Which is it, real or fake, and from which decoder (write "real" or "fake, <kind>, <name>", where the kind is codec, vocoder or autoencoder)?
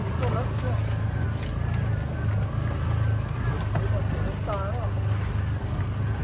real